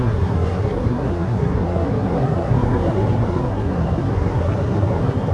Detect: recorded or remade remade